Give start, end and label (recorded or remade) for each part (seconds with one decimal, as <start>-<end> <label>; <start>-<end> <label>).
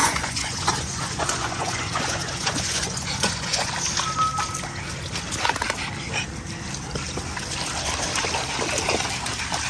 0.0-3.7 remade; 3.7-9.7 recorded